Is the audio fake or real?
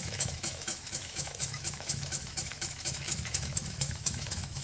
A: fake